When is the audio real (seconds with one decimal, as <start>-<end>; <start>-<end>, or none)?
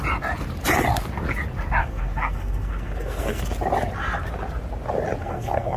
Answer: 0.0-1.8; 3.4-5.2